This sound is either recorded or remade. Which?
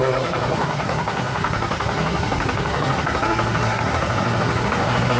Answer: remade